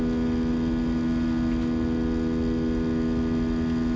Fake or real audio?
real